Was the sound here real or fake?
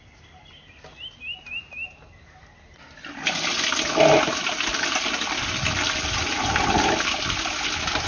real